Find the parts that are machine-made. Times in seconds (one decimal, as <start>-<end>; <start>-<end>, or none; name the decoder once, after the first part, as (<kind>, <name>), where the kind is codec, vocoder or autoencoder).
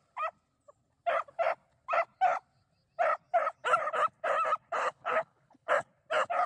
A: 4.8-5.7 (codec, HILCodec)